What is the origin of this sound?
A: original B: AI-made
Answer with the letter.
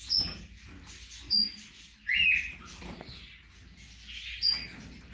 A